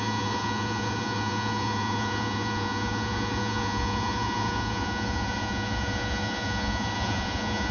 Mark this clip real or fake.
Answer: fake